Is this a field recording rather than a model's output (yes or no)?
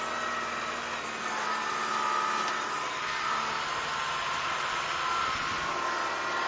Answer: yes